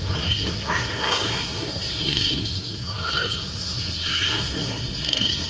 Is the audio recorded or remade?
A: remade